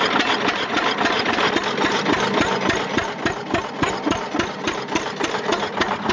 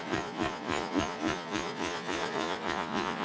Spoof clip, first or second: second